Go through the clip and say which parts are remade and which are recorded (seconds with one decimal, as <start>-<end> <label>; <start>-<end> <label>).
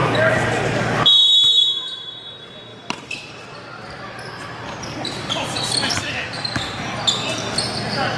0.0-2.7 recorded; 2.7-7.6 remade; 7.6-8.2 recorded